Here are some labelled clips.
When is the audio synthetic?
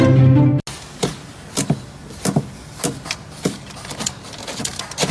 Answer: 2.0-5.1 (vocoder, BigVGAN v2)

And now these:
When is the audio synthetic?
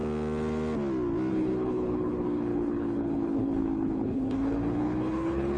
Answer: 1.3-5.6 (codec, HILCodec)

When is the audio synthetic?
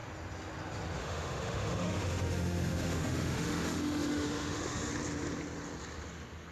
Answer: 1.0-4.9 (autoencoder, DAC-VAE)